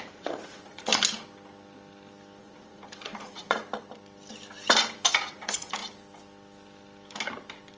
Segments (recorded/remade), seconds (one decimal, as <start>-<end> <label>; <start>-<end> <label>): 0.0-0.9 remade; 0.9-2.4 recorded; 2.4-3.6 remade; 3.6-5.1 recorded; 5.1-5.8 remade; 5.8-7.8 recorded